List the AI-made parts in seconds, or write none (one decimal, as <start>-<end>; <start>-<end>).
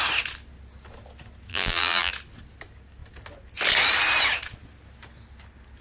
1.5-2.1